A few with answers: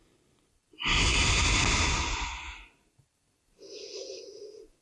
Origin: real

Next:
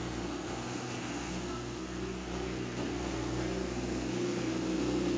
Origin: fake